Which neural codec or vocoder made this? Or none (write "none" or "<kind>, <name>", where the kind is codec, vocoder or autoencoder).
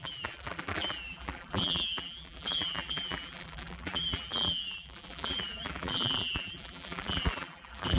vocoder, BigVGAN v2